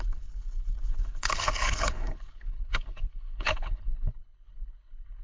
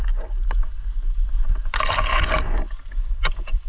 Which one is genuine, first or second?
second